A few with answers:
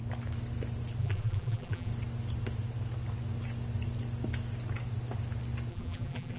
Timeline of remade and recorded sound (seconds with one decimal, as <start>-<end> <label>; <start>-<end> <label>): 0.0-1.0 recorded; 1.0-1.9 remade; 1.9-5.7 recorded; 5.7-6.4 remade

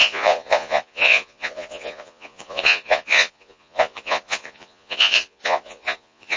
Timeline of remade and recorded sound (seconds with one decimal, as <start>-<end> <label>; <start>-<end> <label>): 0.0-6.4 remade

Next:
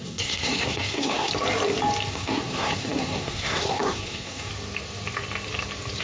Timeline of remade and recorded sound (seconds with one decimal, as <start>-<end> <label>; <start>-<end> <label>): 0.0-1.3 remade; 1.3-2.1 recorded; 2.1-4.5 remade; 4.5-6.0 recorded

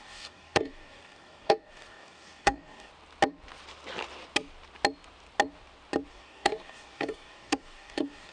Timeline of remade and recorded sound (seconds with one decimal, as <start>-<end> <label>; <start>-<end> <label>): 0.0-2.9 remade; 2.9-6.1 recorded; 6.1-8.3 remade